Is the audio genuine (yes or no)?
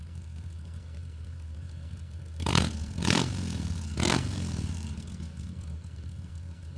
no